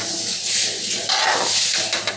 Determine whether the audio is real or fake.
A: real